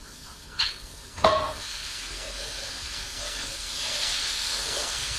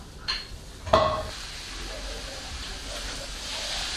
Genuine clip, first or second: second